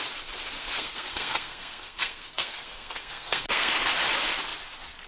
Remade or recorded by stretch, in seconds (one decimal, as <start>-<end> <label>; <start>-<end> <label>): 0.0-0.6 recorded; 0.6-3.7 remade; 3.7-5.1 recorded